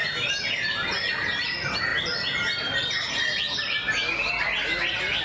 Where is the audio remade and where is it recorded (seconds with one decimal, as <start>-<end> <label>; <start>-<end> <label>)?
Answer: 0.0-5.2 recorded